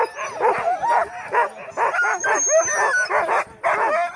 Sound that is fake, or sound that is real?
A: real